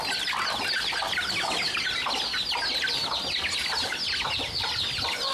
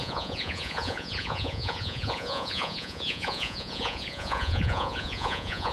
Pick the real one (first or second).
first